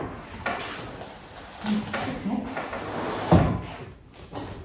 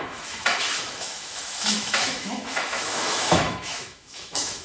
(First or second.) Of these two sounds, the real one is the first